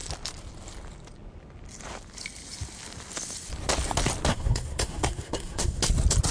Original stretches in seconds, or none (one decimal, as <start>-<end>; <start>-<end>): 0.0-4.3; 5.8-6.3